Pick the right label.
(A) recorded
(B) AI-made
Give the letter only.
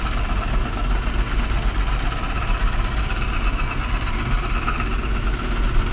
A